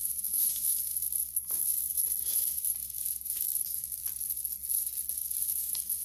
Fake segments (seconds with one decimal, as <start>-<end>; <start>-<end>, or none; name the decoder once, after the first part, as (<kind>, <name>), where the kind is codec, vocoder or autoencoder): 0.0-4.0 (autoencoder, DAC-VAE); 5.1-6.0